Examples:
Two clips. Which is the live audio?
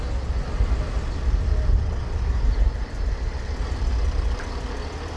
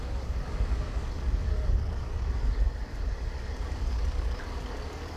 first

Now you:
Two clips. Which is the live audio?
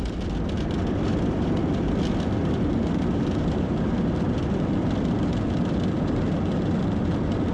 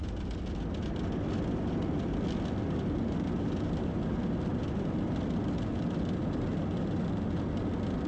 second